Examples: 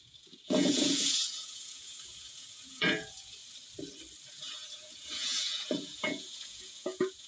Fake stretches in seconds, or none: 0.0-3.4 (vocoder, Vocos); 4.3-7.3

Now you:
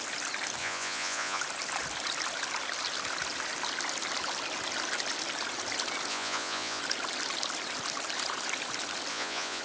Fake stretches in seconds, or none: 0.6-1.4 (vocoder, Vocos); 6.1-6.8; 9.1-9.6

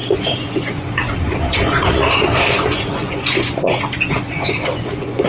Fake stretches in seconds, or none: 0.0-5.3 (vocoder, Vocos)

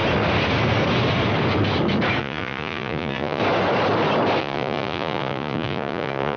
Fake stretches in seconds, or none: 2.2-3.4 (vocoder, Vocos); 4.4-6.4

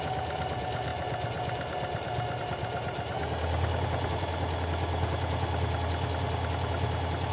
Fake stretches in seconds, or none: none

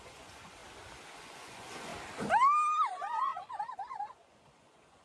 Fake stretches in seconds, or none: 0.0-0.6 (vocoder, Vocos); 1.1-1.9; 2.9-5.0

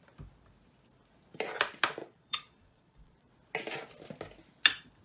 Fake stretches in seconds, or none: 2.0-3.3 (vocoder, Vocos)